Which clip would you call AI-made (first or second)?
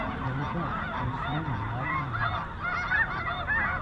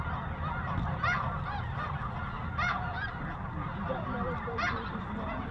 second